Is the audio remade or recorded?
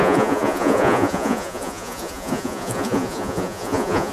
remade